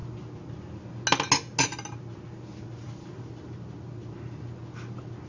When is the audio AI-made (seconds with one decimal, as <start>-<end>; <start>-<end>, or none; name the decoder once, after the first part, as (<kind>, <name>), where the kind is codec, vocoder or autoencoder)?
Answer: none